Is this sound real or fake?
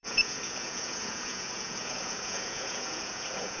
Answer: fake